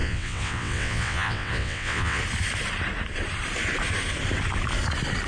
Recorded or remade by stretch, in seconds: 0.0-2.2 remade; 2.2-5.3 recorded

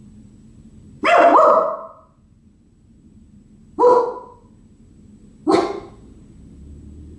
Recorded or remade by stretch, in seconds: 0.0-7.2 recorded

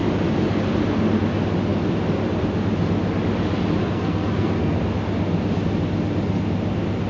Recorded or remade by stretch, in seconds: 0.0-3.8 recorded; 3.8-4.8 remade; 4.8-7.1 recorded

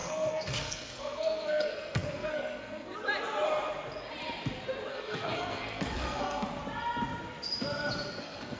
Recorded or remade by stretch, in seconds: 0.0-2.9 remade; 2.9-4.9 recorded; 4.9-6.6 remade; 6.6-8.2 recorded; 8.2-8.6 remade

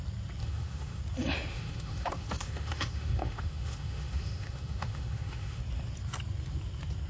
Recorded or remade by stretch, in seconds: 0.0-0.4 recorded; 0.4-1.0 remade; 1.0-1.5 recorded; 1.5-5.6 remade; 5.6-7.1 recorded

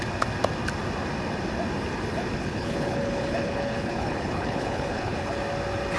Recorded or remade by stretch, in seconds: 0.0-2.4 recorded; 2.4-5.3 remade; 5.3-6.0 recorded

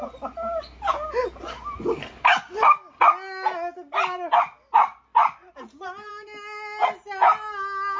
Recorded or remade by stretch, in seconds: 0.0-5.1 recorded; 5.1-6.1 remade; 6.1-8.0 recorded

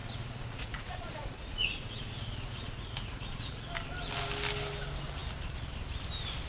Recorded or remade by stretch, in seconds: 0.0-3.7 remade; 3.7-6.5 recorded